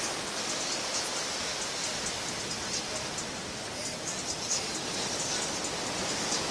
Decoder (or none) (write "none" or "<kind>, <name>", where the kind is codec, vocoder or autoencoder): none